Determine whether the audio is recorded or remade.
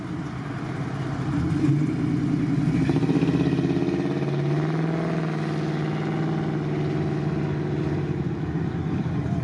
recorded